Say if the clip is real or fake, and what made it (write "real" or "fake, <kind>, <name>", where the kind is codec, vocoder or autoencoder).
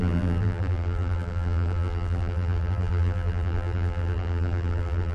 fake, vocoder, BigVGAN v2